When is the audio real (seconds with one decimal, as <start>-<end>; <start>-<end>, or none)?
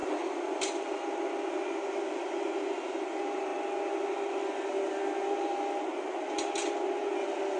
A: 0.0-7.6